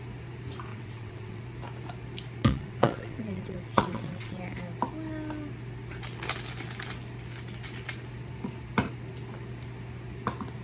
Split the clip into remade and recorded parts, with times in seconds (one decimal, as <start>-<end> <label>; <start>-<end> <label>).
0.0-0.7 recorded; 0.7-1.4 remade; 1.4-2.4 recorded; 2.4-4.4 remade; 4.4-10.6 recorded